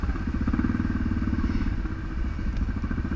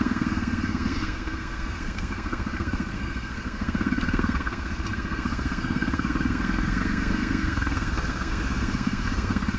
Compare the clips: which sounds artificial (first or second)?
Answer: second